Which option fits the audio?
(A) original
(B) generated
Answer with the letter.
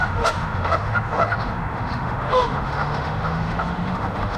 B